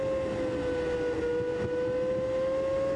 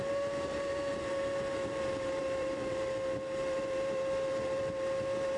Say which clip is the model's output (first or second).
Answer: second